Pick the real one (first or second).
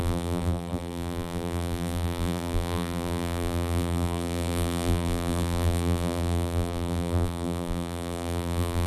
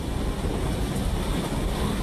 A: second